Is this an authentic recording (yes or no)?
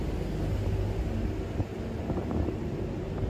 yes